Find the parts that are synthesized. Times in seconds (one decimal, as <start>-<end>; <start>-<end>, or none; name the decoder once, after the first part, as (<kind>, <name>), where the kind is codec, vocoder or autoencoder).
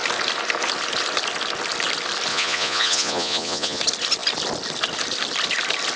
2.3-3.8 (vocoder, Vocos)